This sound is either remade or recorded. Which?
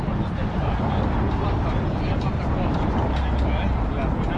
recorded